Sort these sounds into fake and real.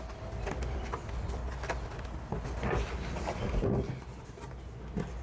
real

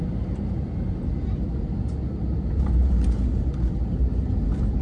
real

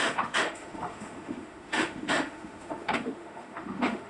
fake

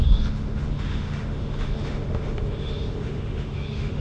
fake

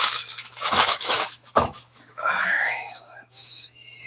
fake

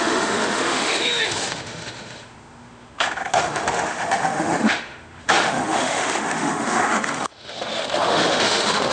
fake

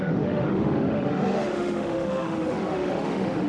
fake